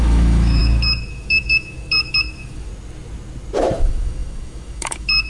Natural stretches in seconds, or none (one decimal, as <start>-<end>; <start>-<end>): 2.7-3.8